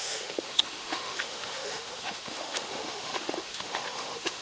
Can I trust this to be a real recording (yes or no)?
no